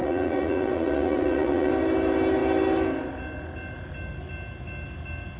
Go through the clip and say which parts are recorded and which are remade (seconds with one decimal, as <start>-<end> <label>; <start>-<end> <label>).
0.0-1.7 remade; 1.7-5.4 recorded